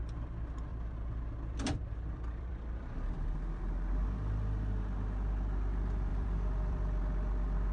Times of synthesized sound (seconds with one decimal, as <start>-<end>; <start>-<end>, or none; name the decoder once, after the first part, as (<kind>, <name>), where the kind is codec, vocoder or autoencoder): 0.7-3.6 (vocoder, BigVGAN v2); 6.1-7.0